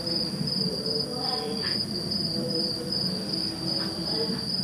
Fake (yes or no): yes